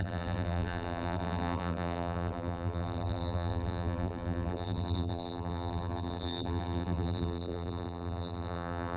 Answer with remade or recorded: remade